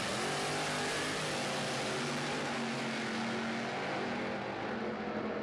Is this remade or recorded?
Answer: recorded